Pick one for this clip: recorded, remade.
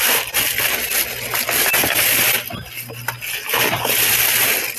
recorded